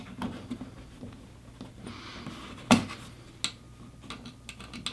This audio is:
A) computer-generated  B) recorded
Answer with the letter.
B